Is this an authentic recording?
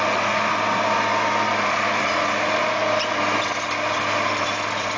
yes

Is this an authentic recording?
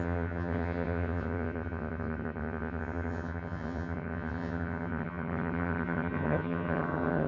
no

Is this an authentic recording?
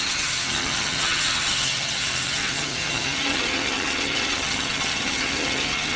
no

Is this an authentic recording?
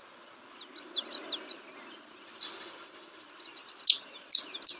yes